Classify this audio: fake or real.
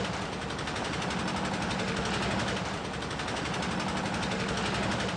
real